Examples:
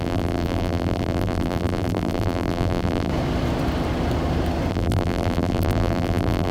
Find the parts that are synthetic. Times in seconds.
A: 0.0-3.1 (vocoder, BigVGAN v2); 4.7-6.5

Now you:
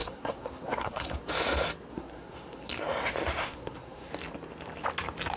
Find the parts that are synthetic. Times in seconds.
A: 0.0-1.2 (codec, SNAC); 1.9-2.7; 3.4-4.1